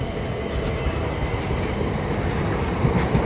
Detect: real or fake real